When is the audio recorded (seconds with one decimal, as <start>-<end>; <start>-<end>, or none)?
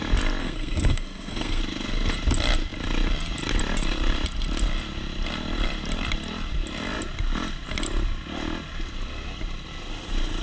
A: 0.0-0.4; 1.6-10.4